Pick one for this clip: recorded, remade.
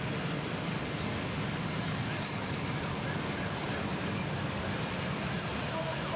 recorded